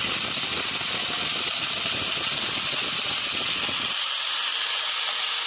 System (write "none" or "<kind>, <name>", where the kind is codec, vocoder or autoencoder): none